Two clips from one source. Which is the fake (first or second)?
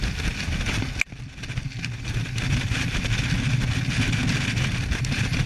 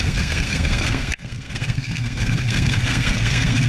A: second